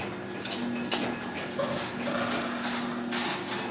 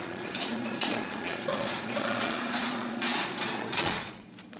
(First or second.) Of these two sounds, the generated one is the second